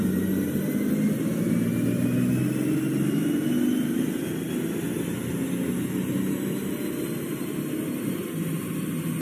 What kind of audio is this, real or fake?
real